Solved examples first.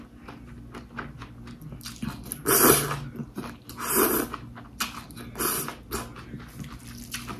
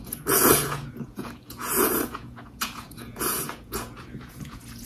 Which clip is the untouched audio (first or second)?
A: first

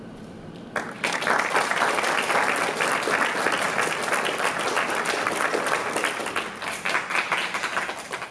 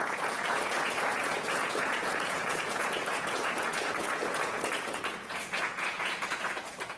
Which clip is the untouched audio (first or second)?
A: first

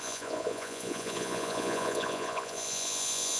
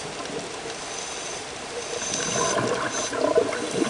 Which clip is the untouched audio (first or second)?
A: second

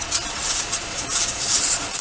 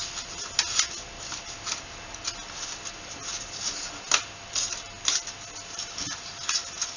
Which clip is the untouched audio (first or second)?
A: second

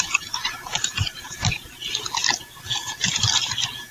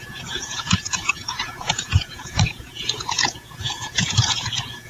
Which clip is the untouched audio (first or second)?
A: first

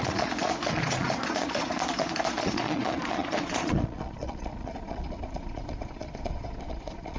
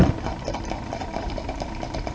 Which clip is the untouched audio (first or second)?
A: second